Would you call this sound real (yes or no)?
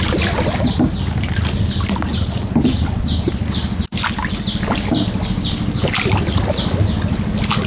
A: yes